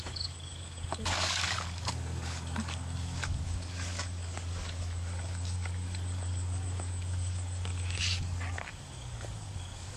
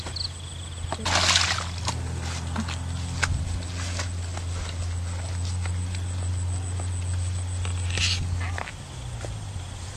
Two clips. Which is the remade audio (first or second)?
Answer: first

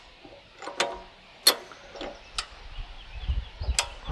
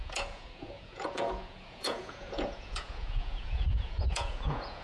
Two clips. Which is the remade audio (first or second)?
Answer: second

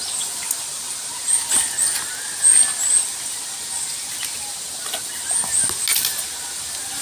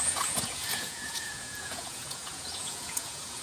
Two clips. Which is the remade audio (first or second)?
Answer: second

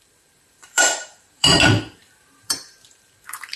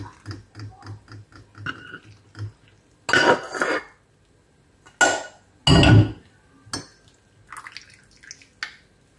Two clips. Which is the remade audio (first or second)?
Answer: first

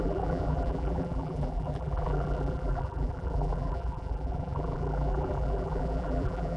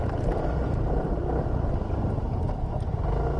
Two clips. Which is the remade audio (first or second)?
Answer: first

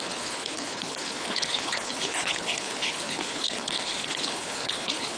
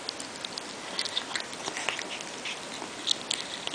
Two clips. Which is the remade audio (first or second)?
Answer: first